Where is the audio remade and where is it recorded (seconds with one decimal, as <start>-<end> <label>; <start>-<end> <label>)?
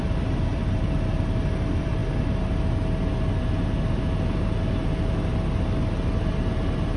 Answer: 0.0-2.0 remade; 2.0-6.2 recorded; 6.2-7.0 remade